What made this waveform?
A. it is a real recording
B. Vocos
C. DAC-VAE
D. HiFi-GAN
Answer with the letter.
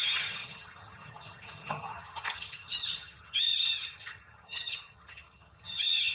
D